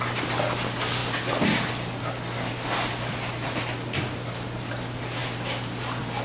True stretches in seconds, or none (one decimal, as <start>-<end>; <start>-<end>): 0.0-6.2